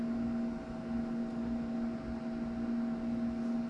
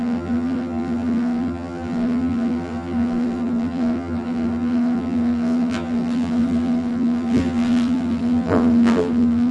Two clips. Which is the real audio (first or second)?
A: first